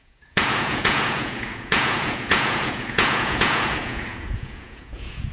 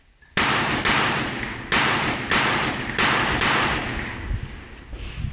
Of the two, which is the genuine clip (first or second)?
second